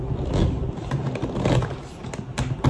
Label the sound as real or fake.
real